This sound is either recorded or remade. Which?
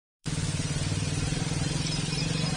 remade